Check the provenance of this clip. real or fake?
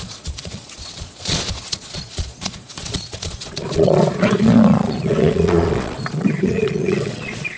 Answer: fake